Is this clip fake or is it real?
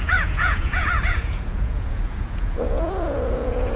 fake